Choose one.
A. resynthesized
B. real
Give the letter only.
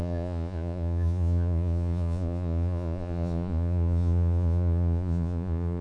A